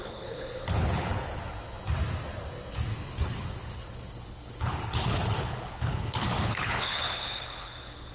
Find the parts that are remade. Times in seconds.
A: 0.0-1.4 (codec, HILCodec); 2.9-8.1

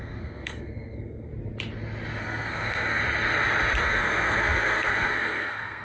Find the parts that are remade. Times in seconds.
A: 0.0-1.3 (codec, SNAC); 2.2-3.0; 3.8-5.8

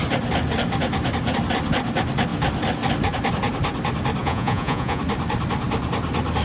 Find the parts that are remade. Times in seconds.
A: 4.2-5.0 (vocoder, Vocos)

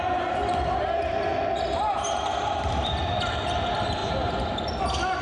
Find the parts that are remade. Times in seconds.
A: 4.0-4.8 (vocoder, BigVGAN v2)

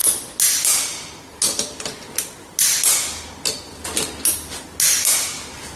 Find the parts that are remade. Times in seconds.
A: none

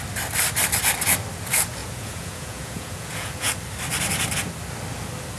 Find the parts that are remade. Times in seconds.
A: 1.8-3.5 (vocoder, Vocos)

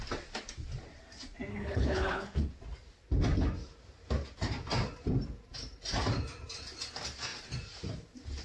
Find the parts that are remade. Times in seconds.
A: 1.5-2.5 (codec, HILCodec)